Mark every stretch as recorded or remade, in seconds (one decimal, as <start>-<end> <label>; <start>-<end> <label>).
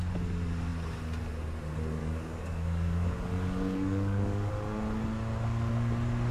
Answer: 0.0-2.0 recorded; 2.0-4.5 remade; 4.5-6.3 recorded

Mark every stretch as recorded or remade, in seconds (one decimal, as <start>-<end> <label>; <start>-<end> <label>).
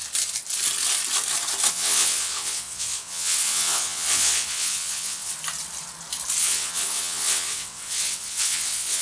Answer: 0.0-1.7 recorded; 1.7-5.3 remade; 5.3-6.4 recorded; 6.4-9.0 remade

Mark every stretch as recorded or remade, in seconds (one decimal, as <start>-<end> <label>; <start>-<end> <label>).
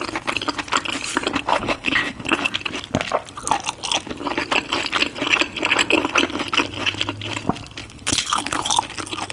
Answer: 0.0-1.5 recorded; 1.5-2.5 remade; 2.5-7.8 recorded; 7.8-8.7 remade; 8.7-9.3 recorded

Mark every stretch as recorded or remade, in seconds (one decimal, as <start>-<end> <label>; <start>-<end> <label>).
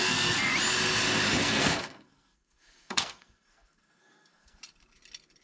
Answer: 0.0-0.5 remade; 0.5-1.4 recorded; 1.4-4.6 remade; 4.6-5.4 recorded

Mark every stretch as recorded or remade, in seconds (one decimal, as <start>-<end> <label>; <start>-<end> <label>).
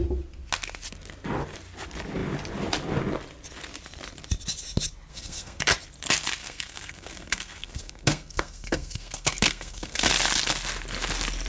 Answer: 0.0-5.1 recorded; 5.1-5.6 remade; 5.6-6.4 recorded; 6.4-10.1 remade; 10.1-11.5 recorded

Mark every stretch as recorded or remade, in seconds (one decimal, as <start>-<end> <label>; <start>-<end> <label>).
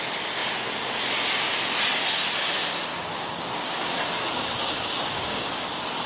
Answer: 0.0-2.9 recorded; 2.9-5.5 remade; 5.5-6.1 recorded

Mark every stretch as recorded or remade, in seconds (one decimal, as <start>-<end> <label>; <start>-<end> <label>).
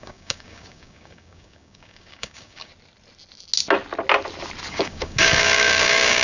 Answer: 0.0-2.7 remade; 2.7-4.7 recorded; 4.7-6.2 remade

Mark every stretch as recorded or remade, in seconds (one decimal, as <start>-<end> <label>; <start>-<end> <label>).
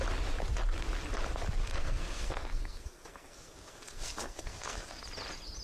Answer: 0.0-1.6 recorded; 1.6-5.0 remade; 5.0-5.6 recorded